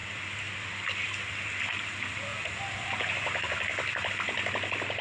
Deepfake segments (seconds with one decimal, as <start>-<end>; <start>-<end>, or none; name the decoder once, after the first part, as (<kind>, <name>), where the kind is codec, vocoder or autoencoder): 1.6-2.3 (vocoder, BigVGAN v2); 4.1-5.0